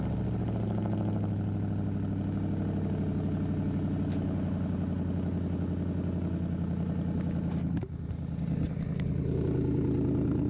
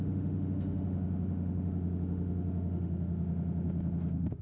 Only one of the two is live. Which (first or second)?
first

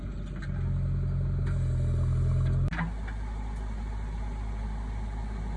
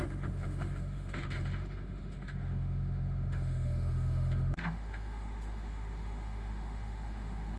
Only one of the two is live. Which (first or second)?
first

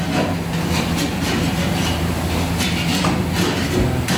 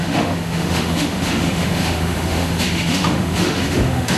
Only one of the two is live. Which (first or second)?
first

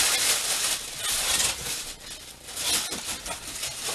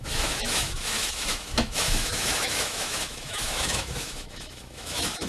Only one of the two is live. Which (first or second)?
first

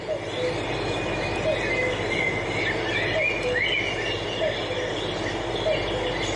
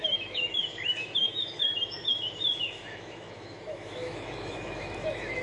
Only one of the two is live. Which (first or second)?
first